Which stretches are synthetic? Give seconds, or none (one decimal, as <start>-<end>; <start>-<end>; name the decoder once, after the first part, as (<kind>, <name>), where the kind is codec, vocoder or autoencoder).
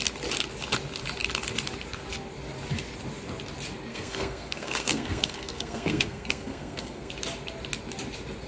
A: 3.9-7.1 (codec, SNAC)